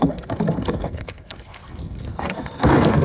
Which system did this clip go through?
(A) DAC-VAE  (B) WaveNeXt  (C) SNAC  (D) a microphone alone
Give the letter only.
C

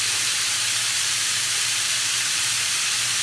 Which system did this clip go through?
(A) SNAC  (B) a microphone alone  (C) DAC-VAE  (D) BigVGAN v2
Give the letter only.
D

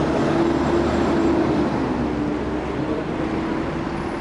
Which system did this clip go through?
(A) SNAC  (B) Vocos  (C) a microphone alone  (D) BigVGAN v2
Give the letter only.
C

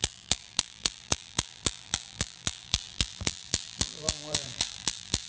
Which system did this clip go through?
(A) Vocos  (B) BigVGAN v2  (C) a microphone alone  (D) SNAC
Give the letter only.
B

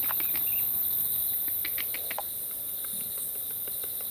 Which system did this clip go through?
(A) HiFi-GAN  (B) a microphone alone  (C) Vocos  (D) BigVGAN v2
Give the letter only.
B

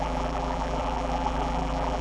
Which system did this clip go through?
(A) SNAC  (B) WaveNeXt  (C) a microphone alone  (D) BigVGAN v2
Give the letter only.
D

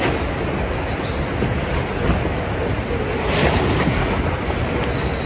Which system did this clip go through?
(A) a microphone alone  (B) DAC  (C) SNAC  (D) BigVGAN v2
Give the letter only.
A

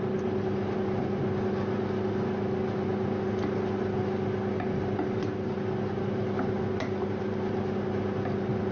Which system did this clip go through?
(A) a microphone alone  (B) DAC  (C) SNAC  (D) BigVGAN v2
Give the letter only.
A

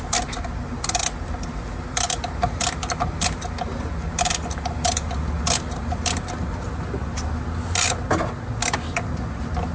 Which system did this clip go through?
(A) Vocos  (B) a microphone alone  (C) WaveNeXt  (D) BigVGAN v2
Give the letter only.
B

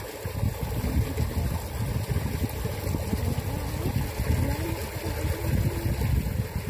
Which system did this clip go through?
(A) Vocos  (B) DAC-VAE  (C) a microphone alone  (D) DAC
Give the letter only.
C